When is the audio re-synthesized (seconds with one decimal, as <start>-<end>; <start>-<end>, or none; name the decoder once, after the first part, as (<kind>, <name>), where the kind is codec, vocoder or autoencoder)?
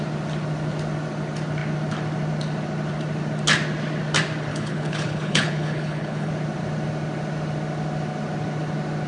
4.5-6.3 (codec, HILCodec)